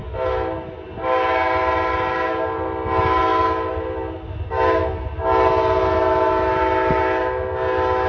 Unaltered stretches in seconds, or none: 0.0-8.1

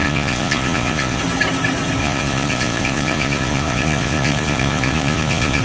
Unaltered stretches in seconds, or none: 1.2-2.0

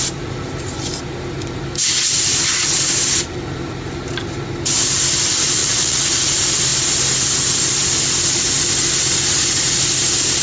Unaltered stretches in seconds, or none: 0.0-5.6; 6.1-10.4

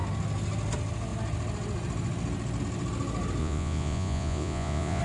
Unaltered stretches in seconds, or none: 0.0-3.4

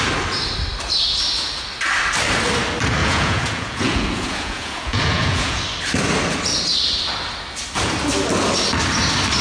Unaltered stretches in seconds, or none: 0.0-3.0; 5.6-9.4

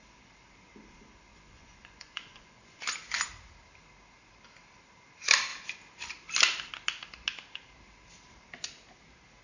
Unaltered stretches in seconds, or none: 0.0-1.3; 2.8-9.4